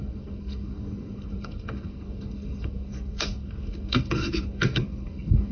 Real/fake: fake